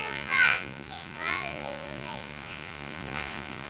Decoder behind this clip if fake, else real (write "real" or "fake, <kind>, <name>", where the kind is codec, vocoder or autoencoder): fake, vocoder, Vocos